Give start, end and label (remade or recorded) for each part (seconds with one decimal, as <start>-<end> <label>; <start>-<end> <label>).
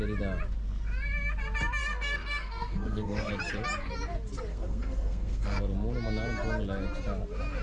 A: 0.0-1.8 recorded; 1.8-3.3 remade; 3.3-4.5 recorded; 4.5-5.6 remade; 5.6-7.6 recorded